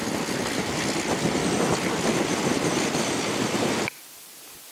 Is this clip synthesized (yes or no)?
no